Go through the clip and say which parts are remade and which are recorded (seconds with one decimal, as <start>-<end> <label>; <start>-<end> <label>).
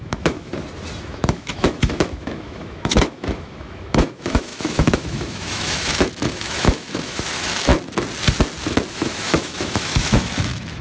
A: 0.0-0.5 remade; 0.5-1.0 recorded; 1.0-7.7 remade; 7.7-8.9 recorded; 8.9-10.8 remade